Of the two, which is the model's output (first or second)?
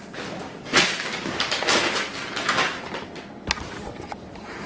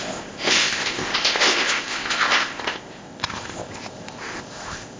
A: second